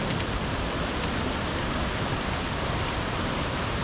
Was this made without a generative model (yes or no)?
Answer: yes